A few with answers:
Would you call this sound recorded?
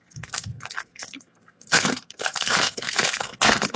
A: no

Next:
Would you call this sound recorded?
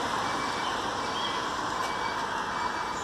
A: yes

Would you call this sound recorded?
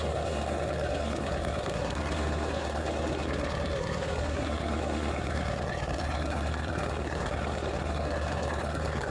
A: no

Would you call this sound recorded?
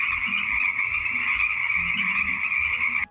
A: yes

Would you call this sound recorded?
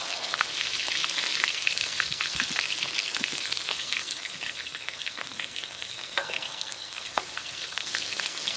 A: no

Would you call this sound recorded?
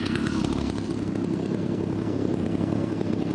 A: no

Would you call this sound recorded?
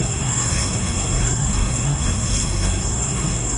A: no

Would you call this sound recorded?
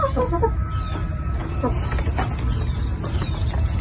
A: yes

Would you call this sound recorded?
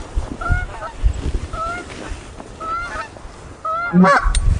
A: yes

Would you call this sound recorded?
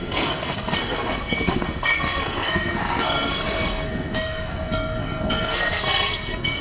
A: no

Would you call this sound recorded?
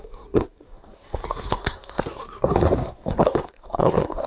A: no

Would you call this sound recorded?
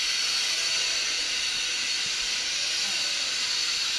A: yes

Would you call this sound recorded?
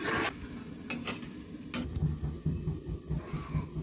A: yes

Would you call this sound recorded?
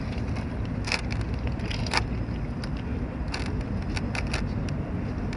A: yes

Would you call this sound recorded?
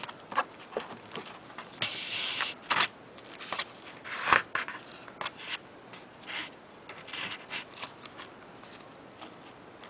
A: yes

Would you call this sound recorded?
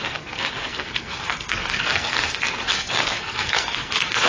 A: no